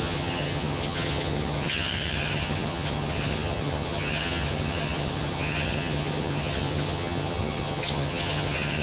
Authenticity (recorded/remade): remade